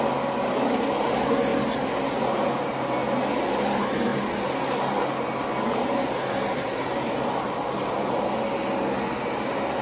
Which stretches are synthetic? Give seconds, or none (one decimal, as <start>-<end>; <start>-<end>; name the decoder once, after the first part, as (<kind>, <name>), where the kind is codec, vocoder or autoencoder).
none